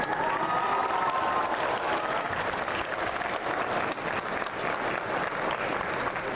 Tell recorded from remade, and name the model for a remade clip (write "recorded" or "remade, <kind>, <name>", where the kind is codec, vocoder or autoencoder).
recorded